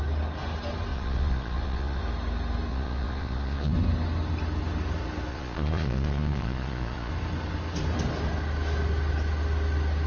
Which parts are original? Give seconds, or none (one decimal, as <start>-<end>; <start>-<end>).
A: 0.0-0.9; 2.0-2.7; 3.7-5.3; 7.1-10.1